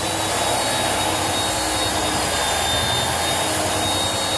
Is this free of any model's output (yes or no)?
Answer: yes